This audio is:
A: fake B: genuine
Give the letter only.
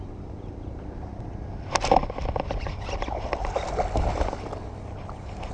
B